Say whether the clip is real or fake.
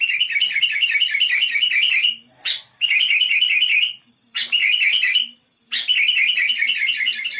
fake